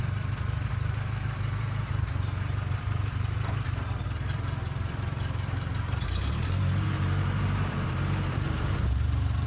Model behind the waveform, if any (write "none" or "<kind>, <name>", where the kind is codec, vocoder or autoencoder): vocoder, BigVGAN v2